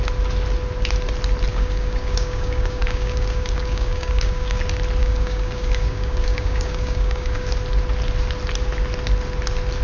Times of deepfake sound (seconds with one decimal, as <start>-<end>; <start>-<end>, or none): 1.5-4.6; 5.0-7.5